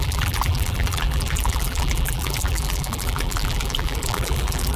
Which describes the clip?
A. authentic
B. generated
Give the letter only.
B